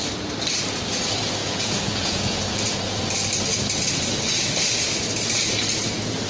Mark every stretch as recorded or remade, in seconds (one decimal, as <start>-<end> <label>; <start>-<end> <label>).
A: 0.0-1.4 recorded; 1.4-3.0 remade; 3.0-6.3 recorded